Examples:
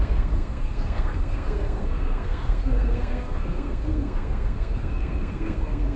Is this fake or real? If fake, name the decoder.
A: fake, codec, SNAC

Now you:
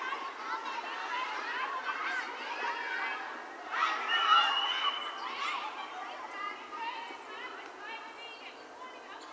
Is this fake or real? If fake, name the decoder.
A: real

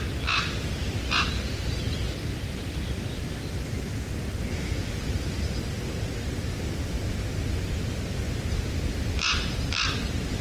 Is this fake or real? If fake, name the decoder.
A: real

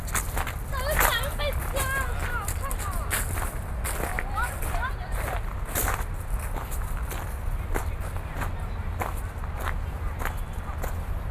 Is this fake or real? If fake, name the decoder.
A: real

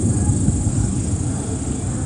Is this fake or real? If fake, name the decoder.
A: real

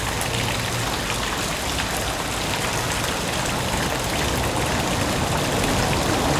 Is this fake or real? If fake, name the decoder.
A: real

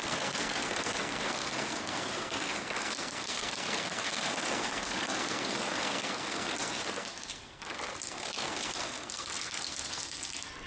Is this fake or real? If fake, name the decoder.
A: fake, codec, SNAC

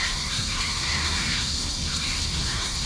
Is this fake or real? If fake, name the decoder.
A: fake, codec, SNAC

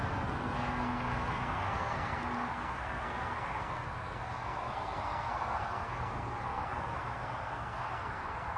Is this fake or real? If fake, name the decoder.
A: fake, codec, SNAC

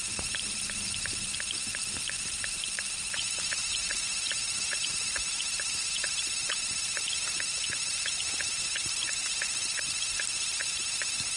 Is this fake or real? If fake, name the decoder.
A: real